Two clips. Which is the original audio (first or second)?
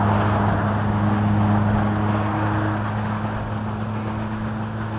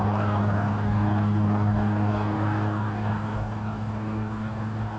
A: first